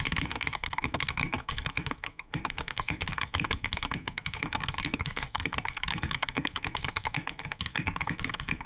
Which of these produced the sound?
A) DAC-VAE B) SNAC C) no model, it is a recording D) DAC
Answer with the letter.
B